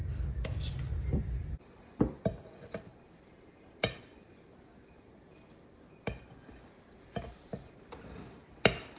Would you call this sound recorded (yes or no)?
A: no